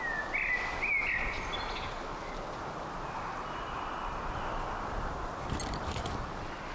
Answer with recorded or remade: recorded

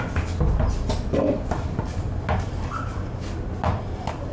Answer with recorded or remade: recorded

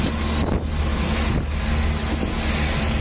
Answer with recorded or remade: recorded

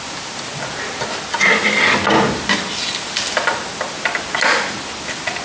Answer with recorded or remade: recorded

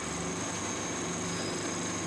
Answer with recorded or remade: recorded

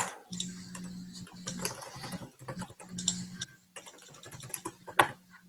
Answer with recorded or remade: recorded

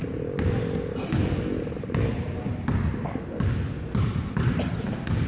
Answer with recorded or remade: recorded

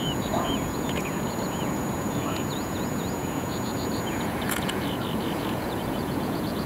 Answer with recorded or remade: remade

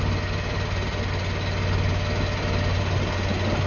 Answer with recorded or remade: recorded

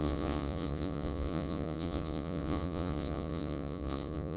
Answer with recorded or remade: remade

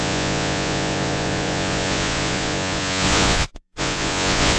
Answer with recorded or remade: remade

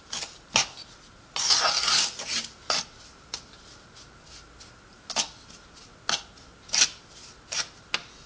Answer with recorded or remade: recorded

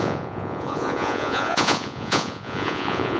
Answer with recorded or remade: remade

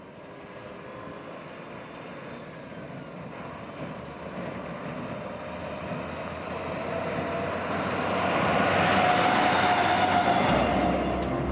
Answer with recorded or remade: recorded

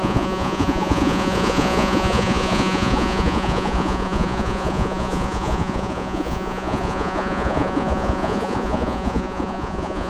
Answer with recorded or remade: remade